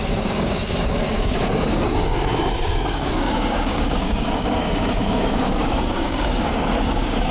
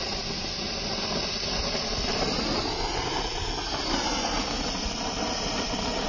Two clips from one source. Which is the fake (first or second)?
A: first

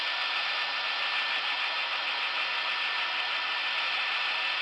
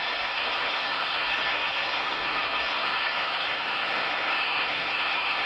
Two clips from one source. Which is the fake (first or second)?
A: second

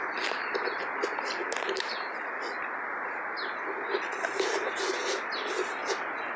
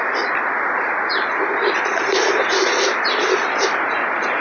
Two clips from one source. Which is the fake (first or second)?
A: second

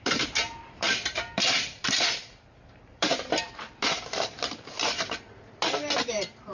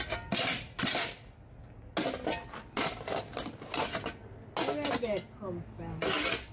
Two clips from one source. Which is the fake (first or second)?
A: first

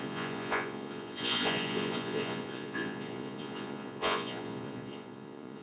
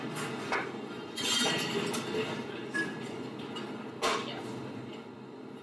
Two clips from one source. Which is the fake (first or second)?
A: first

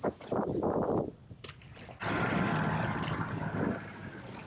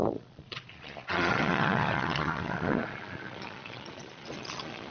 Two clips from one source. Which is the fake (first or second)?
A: second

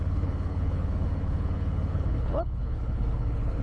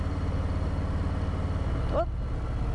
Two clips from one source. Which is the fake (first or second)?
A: first